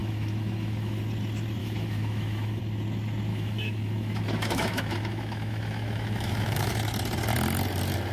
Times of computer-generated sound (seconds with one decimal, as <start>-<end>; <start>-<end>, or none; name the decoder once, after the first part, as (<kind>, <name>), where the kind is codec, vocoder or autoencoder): 0.0-1.0 (autoencoder, DAC-VAE); 1.6-2.6; 3.3-6.7